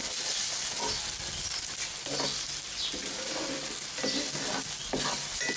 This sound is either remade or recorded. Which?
recorded